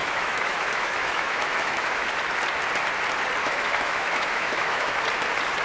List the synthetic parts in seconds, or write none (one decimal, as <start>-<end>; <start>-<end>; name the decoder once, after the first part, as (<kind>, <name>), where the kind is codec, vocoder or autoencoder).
0.0-2.1 (autoencoder, DAC-VAE); 3.4-5.0